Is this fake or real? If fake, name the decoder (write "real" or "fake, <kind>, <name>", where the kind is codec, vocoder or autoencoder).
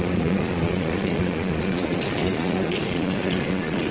fake, vocoder, Vocos